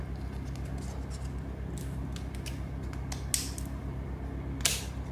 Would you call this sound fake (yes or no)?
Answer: no